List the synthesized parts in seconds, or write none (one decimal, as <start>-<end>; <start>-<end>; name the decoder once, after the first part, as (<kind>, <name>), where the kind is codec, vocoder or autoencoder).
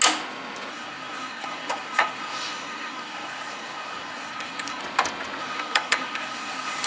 0.7-4.8 (codec, SNAC); 5.4-6.9